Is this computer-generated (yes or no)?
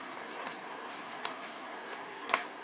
yes